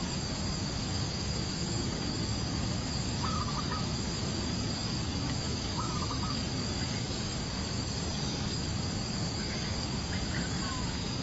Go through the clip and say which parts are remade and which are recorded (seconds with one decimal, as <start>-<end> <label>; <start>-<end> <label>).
0.0-11.2 remade